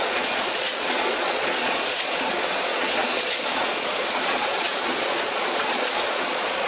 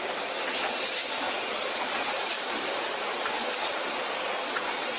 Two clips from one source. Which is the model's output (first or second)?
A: first